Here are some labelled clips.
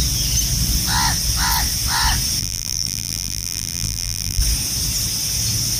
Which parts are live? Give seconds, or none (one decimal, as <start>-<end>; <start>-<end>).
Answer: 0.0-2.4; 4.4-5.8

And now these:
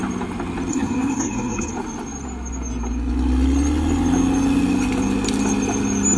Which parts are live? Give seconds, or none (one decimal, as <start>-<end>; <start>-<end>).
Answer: 0.0-0.7; 1.7-6.2

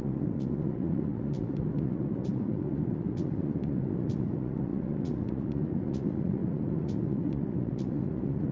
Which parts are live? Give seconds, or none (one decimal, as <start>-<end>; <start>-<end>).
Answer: none